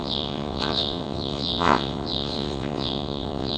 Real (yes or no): no